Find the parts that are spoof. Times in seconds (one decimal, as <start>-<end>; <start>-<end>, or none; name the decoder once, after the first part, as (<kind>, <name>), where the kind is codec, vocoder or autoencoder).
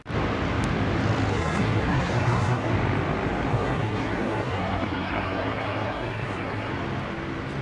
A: 1.3-2.7 (codec, SNAC); 3.5-6.7